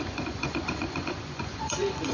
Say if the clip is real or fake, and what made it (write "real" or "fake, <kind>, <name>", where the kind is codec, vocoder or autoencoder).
fake, vocoder, Vocos